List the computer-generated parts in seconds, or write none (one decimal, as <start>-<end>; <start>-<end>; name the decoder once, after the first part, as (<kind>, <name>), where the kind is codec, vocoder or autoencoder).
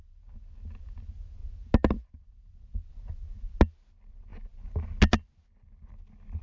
none